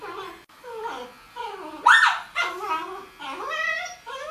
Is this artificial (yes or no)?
no